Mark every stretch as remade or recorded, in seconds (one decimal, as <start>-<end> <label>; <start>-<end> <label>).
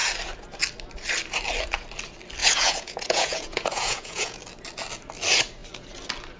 0.0-2.4 recorded; 2.4-4.4 remade; 4.4-6.4 recorded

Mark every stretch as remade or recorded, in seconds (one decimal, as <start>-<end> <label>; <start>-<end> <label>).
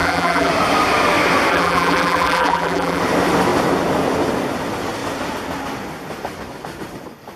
0.0-0.5 remade; 0.5-1.5 recorded; 1.5-3.0 remade; 3.0-7.4 recorded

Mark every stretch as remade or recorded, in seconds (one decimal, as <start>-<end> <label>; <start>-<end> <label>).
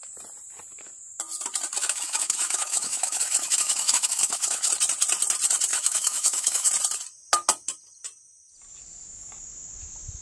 0.0-1.8 recorded; 1.8-4.7 remade; 4.7-5.7 recorded; 5.7-6.7 remade; 6.7-10.2 recorded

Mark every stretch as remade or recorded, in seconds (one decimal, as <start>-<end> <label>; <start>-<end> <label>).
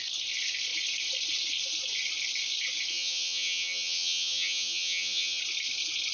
0.0-2.9 recorded; 2.9-5.4 remade; 5.4-6.1 recorded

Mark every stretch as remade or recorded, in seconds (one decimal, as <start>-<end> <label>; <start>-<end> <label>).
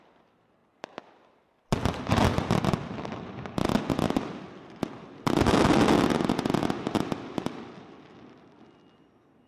0.0-9.5 recorded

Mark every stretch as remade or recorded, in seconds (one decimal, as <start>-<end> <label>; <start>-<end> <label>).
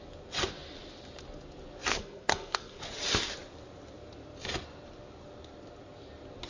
0.0-1.9 recorded; 1.9-2.8 remade; 2.8-6.5 recorded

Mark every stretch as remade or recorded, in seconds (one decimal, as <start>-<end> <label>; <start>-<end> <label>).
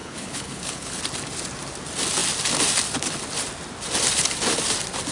0.0-1.0 remade; 1.0-5.1 recorded